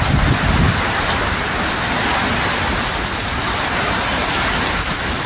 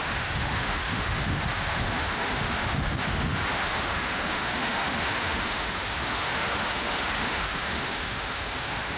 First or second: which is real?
first